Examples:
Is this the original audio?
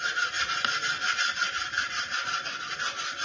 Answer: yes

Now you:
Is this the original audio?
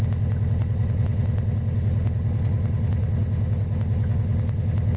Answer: yes